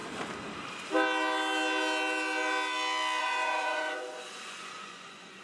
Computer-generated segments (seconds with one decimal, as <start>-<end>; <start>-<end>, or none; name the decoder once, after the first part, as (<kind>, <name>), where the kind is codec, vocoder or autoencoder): 3.2-5.4 (vocoder, Vocos)